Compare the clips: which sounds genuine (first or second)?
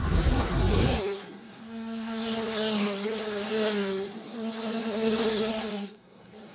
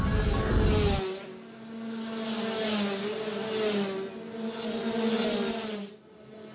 second